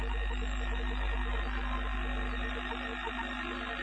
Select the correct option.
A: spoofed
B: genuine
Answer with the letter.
B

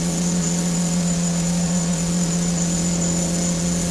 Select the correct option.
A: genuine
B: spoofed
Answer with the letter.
B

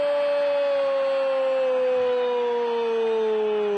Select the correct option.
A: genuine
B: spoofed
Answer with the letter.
A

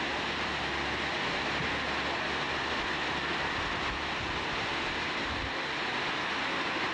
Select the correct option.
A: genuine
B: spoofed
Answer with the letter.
A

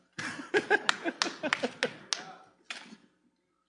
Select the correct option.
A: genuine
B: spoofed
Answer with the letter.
A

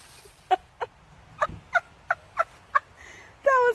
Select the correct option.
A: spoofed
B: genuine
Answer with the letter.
B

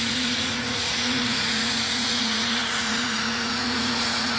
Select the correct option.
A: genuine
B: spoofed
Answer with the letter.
B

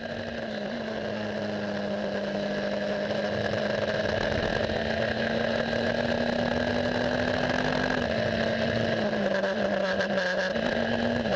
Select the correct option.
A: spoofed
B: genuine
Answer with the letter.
B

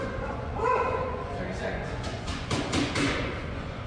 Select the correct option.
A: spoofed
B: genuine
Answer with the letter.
A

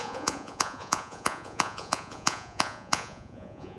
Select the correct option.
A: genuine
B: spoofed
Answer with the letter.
B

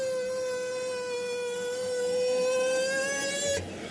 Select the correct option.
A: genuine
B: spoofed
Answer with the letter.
A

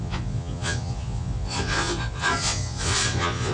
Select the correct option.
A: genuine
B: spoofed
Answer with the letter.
B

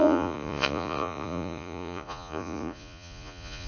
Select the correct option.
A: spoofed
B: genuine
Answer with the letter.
A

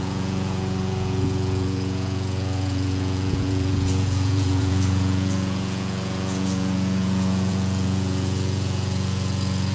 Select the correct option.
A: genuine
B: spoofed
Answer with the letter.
B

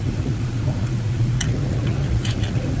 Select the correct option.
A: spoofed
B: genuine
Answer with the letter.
A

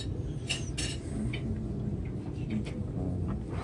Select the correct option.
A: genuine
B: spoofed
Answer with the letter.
A